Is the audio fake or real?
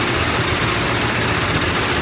real